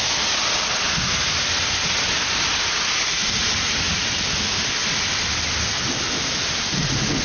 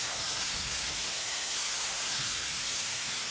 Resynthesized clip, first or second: second